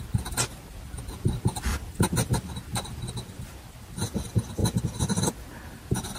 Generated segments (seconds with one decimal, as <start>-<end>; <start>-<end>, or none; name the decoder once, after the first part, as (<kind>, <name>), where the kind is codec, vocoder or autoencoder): 1.7-2.5 (vocoder, BigVGAN v2)